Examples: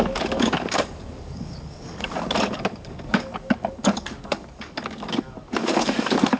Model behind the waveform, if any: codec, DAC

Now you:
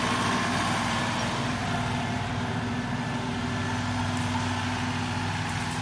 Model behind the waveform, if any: none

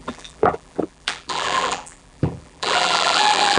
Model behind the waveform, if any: vocoder, BigVGAN v2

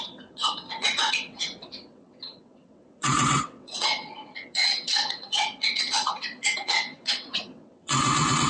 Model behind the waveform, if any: vocoder, WaveNeXt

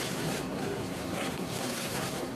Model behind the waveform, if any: codec, SNAC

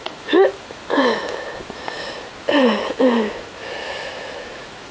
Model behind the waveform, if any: autoencoder, DAC-VAE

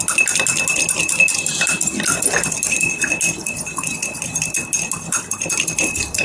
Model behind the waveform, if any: none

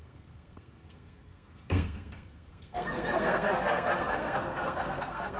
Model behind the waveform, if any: codec, SNAC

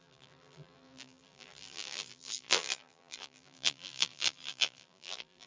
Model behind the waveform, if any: vocoder, BigVGAN v2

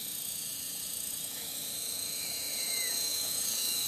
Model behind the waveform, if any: autoencoder, DAC-VAE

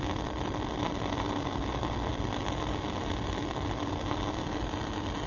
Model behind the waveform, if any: none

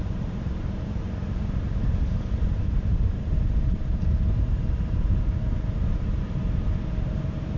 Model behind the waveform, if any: vocoder, BigVGAN v2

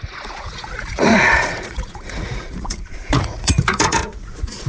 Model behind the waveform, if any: vocoder, Vocos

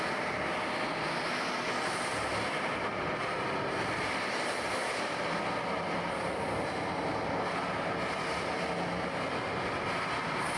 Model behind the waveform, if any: none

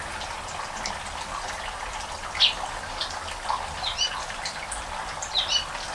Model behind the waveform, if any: none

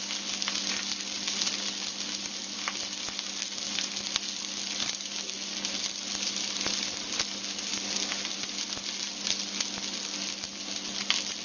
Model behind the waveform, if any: none